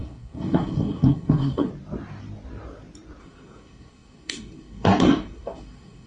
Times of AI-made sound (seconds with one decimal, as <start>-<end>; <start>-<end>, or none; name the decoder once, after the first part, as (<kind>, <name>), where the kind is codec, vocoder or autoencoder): 0.0-1.7 (codec, SNAC); 3.2-6.1